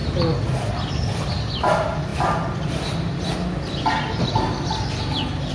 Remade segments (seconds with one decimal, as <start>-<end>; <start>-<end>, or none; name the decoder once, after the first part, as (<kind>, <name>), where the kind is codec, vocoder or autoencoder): none